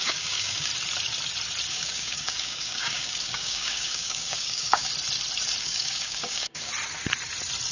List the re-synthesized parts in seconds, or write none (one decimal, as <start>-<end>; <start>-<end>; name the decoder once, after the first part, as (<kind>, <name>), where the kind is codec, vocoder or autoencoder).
0.0-0.7 (codec, DAC); 1.7-4.9; 5.6-6.7